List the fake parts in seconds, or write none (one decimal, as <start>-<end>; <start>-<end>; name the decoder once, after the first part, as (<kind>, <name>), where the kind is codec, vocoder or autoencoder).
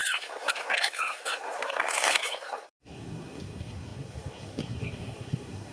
0.0-5.7 (codec, SNAC)